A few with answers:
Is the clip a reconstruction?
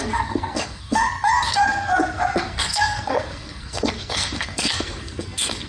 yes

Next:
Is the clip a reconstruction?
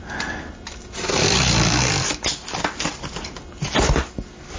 no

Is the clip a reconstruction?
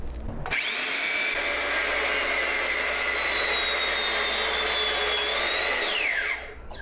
no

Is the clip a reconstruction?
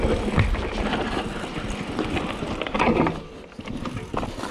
no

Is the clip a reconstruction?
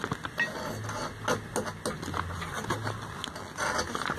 no